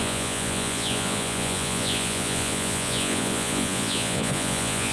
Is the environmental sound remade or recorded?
remade